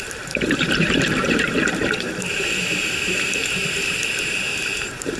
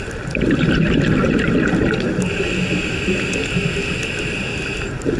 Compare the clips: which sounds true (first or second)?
second